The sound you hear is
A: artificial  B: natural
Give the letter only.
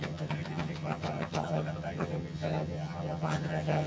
A